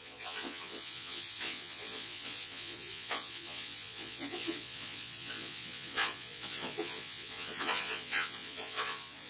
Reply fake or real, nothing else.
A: fake